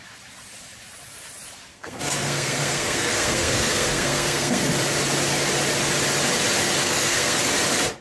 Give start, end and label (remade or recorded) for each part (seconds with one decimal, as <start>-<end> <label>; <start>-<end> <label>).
0.0-1.7 recorded; 1.7-4.7 remade; 4.7-6.8 recorded; 6.8-7.4 remade; 7.4-8.0 recorded